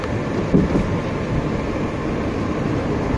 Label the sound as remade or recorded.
recorded